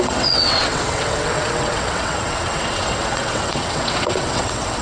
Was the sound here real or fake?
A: fake